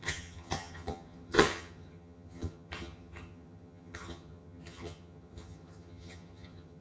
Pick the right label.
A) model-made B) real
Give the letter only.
A